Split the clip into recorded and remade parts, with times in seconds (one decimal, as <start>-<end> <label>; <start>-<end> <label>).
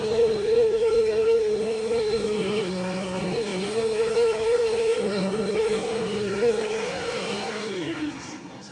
0.0-8.7 remade